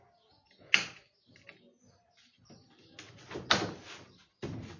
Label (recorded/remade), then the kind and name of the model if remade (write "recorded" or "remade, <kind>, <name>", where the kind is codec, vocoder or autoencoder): recorded